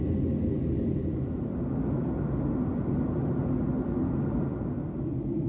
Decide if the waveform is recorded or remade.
recorded